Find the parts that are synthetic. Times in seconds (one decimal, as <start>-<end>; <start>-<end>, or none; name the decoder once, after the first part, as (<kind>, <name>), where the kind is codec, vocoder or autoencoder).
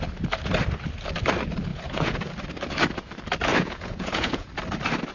1.7-2.3 (vocoder, Vocos); 3.5-4.5